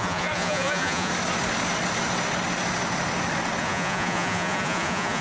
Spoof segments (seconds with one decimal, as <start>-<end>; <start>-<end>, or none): 0.0-1.1; 3.6-5.2